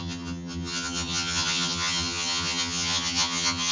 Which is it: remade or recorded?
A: remade